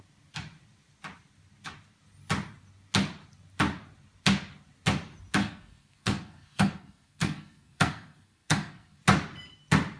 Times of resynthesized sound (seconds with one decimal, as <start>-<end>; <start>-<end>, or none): 5.4-9.0